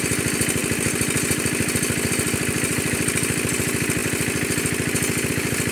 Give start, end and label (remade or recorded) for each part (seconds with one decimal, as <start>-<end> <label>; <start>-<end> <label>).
0.0-5.7 recorded